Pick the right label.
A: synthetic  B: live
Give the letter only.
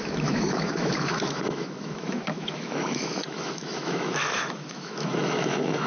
A